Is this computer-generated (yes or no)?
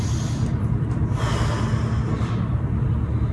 yes